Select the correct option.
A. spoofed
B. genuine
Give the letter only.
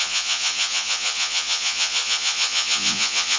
A